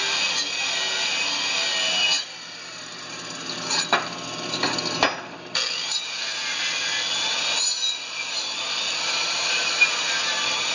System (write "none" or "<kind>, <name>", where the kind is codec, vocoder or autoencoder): none